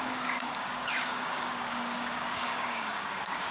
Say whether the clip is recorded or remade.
remade